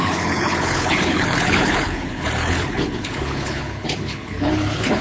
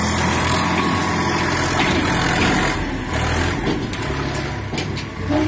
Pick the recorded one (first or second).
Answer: second